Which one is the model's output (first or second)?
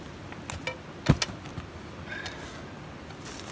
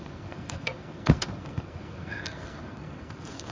second